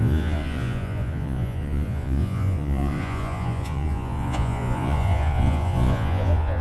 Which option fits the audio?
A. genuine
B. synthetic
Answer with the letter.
B